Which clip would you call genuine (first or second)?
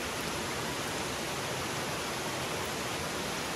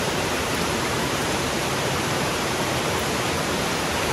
first